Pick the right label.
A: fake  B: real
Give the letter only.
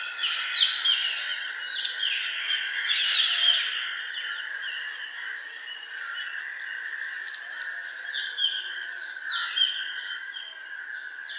B